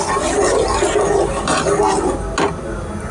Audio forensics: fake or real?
real